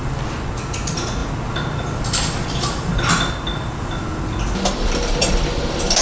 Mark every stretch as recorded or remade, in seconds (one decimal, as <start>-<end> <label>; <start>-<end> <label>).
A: 0.0-6.0 recorded